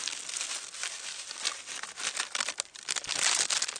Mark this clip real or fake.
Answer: real